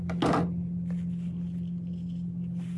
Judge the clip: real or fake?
real